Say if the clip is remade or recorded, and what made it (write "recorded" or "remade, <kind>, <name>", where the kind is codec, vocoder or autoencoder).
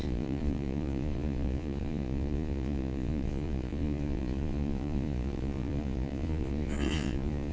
remade, vocoder, Vocos